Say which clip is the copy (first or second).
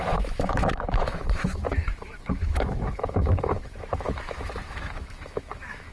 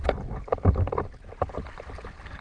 first